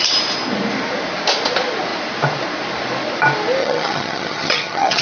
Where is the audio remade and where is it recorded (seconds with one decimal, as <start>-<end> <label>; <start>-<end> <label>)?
0.0-3.6 recorded; 3.6-5.0 remade